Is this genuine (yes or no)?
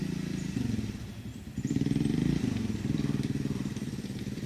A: no